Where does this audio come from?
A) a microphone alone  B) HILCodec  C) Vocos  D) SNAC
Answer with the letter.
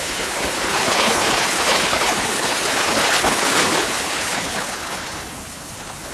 B